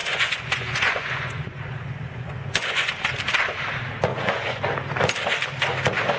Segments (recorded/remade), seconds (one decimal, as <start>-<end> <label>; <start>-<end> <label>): 0.0-2.9 remade; 2.9-4.1 recorded; 4.1-4.6 remade; 4.6-6.2 recorded